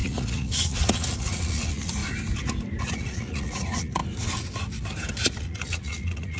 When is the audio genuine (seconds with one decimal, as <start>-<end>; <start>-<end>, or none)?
2.0-2.8; 4.0-5.4